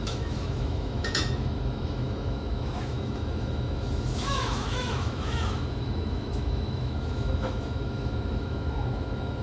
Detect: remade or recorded remade